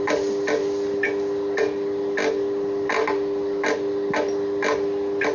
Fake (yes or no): no